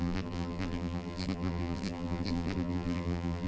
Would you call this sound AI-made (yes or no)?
yes